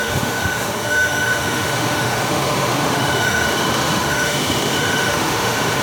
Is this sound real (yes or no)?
no